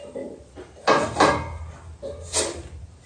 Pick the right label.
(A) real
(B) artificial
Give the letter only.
A